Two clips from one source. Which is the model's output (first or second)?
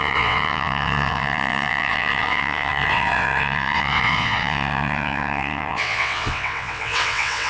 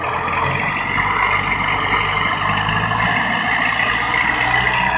first